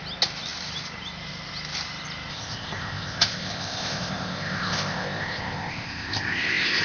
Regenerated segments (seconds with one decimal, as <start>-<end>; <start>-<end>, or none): 2.3-6.8

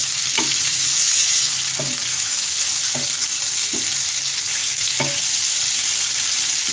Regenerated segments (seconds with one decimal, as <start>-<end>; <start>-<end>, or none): 0.0-1.5; 2.1-2.7; 4.6-5.2

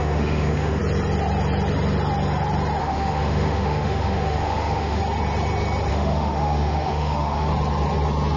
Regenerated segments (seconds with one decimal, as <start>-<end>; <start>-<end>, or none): 0.0-0.8; 2.8-5.0; 5.9-7.5

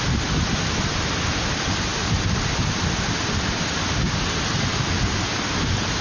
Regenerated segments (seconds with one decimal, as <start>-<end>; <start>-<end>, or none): none

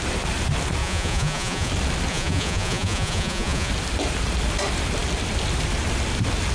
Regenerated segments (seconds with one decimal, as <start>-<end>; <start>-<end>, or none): 0.8-1.7; 2.1-3.7

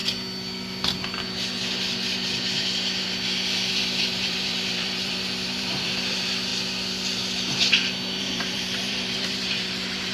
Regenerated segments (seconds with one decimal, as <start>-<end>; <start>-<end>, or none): 3.7-6.5; 8.2-10.1

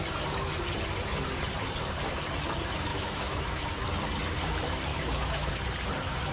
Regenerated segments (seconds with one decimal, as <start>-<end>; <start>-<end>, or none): 2.9-3.6; 4.9-5.5

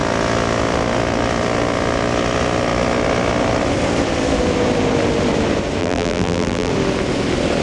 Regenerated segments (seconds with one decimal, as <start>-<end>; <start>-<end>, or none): 5.8-6.7